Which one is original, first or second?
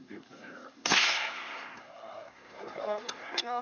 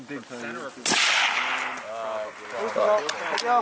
second